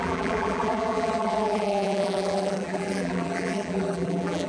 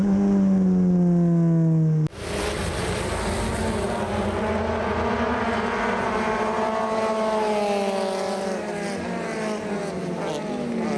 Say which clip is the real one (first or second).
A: second